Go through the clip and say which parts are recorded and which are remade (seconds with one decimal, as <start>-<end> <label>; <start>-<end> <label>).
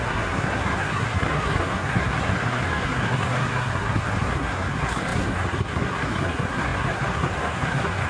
0.0-8.1 remade